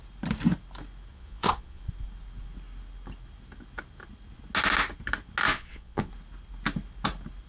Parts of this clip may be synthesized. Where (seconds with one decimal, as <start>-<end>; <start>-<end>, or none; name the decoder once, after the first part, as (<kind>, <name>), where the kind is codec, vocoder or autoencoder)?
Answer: 1.1-1.8 (vocoder, Vocos); 5.5-6.1